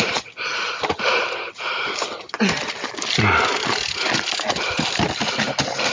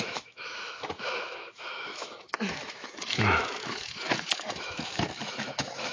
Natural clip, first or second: first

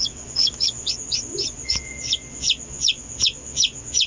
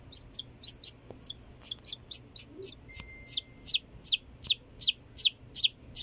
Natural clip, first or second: second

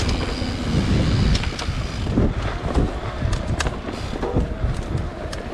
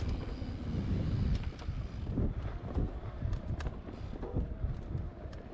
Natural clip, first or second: first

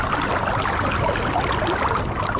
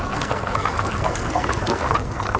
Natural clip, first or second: first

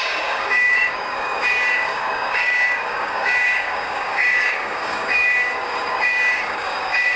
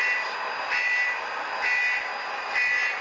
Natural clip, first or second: second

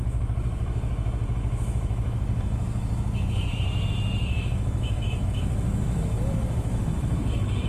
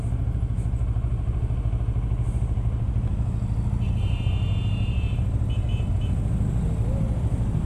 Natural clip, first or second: second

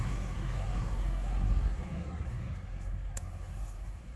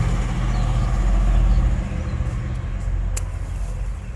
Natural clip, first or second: second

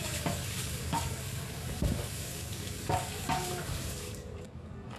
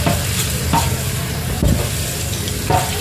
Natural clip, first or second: second